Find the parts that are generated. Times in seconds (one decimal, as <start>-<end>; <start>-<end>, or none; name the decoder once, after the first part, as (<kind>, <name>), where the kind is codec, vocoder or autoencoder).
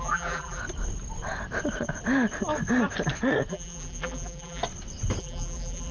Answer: 0.0-0.6 (vocoder, BigVGAN v2); 3.5-4.6; 5.2-5.9